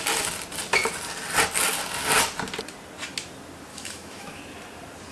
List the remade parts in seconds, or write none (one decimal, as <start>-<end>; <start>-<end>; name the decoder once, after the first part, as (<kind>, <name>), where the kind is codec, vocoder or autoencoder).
3.7-4.4 (autoencoder, DAC-VAE)